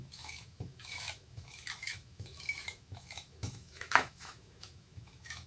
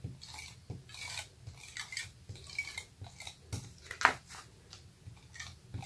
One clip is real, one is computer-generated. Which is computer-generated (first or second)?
first